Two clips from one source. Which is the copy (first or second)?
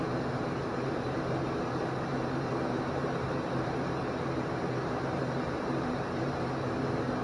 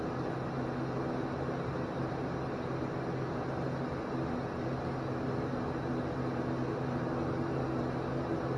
first